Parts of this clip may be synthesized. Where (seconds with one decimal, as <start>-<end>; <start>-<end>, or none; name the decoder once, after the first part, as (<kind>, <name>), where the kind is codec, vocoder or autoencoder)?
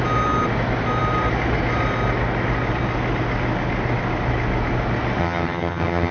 5.2-6.1 (vocoder, HiFi-GAN)